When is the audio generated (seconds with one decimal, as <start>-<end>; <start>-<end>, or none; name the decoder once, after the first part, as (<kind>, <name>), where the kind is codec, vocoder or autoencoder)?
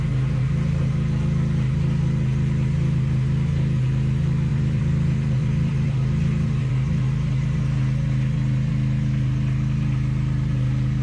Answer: 4.5-6.7 (vocoder, BigVGAN v2)